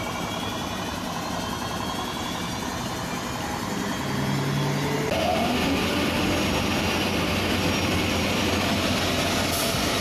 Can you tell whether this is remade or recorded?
recorded